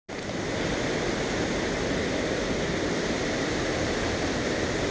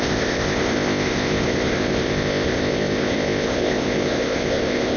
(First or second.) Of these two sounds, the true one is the first